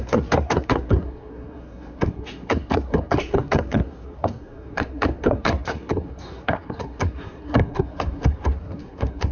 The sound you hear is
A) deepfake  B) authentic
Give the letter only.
A